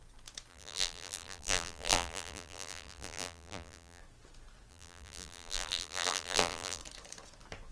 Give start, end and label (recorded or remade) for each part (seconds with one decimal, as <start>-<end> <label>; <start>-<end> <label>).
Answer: 0.0-0.5 recorded; 0.5-4.0 remade; 4.0-4.7 recorded; 4.7-6.8 remade; 6.8-7.7 recorded